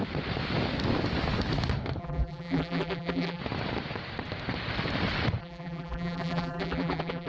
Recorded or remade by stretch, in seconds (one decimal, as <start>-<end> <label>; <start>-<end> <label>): 0.0-2.0 recorded; 2.0-3.4 remade; 3.4-5.4 recorded; 5.4-7.3 remade